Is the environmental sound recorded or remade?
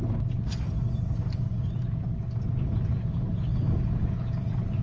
recorded